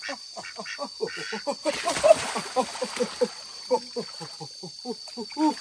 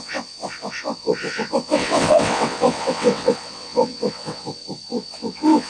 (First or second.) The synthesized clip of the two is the second